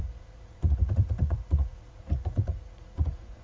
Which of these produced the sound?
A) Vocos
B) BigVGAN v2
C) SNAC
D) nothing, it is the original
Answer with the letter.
A